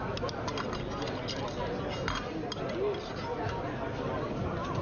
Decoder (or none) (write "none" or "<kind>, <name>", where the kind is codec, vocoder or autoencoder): none